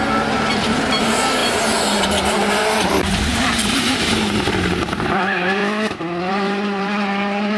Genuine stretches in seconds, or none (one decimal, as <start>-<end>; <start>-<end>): 5.6-6.3

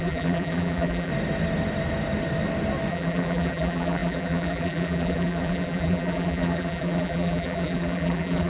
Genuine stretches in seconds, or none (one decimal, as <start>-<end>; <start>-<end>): 1.1-2.9

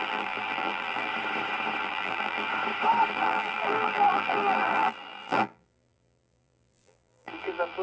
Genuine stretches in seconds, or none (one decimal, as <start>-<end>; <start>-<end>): 1.1-1.8; 2.5-3.1

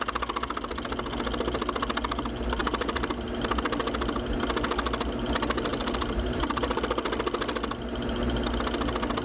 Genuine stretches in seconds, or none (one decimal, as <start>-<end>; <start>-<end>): 0.0-2.6; 3.1-5.7; 6.8-9.2